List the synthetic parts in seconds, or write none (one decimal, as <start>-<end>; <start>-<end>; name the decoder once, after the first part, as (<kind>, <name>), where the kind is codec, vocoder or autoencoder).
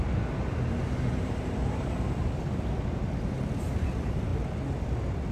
none